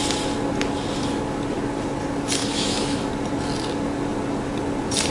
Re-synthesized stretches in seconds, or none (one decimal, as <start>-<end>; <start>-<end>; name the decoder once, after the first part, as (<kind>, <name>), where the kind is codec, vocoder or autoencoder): 2.4-3.1 (autoencoder, DAC-VAE)